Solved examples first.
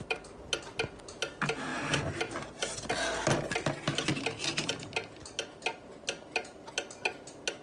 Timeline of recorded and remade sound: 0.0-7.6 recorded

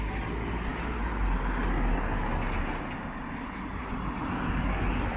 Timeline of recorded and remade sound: 0.0-5.2 recorded